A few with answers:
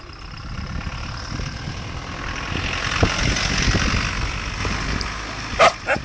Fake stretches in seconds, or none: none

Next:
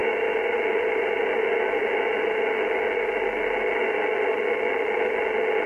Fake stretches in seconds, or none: none

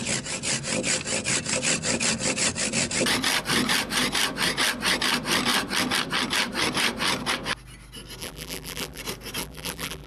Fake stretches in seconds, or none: 8.2-9.0; 9.4-10.1

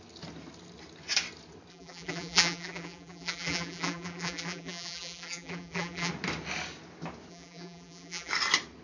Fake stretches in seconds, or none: 1.7-6.1; 7.3-8.3

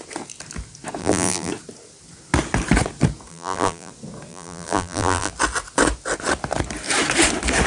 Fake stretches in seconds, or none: 1.0-1.5; 3.3-3.9; 4.3-5.3

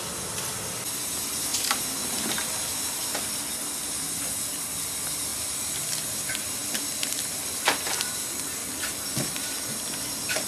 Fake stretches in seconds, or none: 5.3-5.8; 8.6-9.1

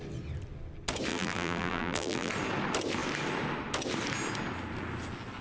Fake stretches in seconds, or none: 1.1-2.3